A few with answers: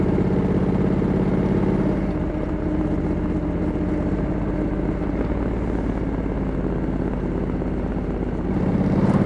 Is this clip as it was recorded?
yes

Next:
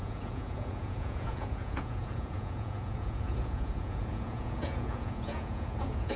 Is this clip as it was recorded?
no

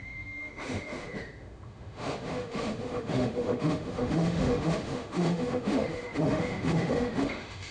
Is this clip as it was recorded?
no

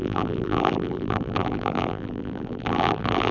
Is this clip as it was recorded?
no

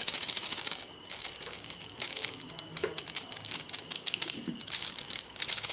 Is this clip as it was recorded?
no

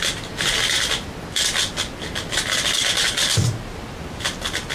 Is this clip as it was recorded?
yes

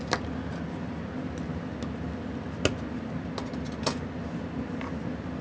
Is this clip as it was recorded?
yes